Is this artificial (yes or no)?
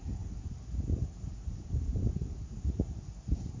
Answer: yes